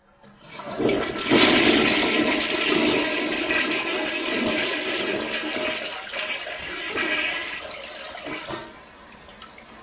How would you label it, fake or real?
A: real